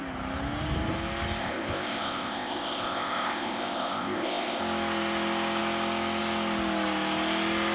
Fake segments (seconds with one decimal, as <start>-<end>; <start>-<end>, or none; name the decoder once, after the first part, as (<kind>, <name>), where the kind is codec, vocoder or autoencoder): 1.4-4.6 (codec, ZipCodec)